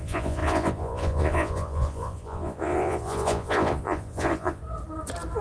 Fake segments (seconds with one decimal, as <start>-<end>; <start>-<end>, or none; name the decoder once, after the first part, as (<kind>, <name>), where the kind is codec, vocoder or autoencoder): 0.0-4.6 (vocoder, Vocos)